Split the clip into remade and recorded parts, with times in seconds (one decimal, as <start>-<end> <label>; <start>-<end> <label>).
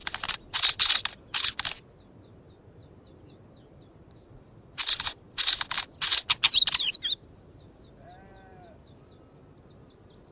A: 0.0-10.3 recorded